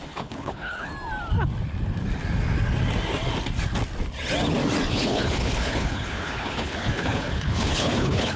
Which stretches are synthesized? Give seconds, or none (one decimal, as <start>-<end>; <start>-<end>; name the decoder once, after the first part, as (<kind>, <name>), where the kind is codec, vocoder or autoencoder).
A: 0.0-0.9 (codec, HILCodec); 4.9-8.4